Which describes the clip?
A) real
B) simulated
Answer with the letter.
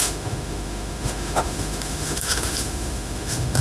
B